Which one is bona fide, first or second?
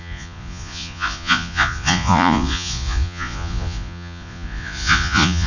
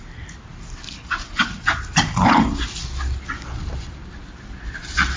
second